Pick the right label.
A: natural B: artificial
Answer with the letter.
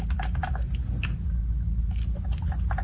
A